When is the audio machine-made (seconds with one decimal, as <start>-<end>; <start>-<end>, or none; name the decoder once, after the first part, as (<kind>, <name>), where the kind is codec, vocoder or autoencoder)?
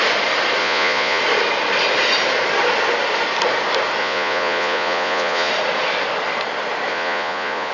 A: 0.6-1.2 (vocoder, Vocos); 4.0-5.5; 6.9-7.7